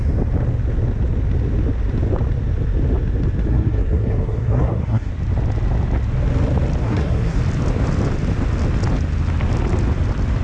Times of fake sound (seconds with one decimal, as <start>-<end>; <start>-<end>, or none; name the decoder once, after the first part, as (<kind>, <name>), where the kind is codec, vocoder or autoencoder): 3.5-5.1 (codec, SNAC); 6.8-7.4